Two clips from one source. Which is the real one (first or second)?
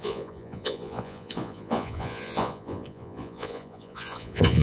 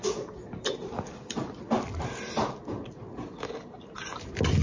second